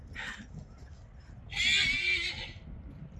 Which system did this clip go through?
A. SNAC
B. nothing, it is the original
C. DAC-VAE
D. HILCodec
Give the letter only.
B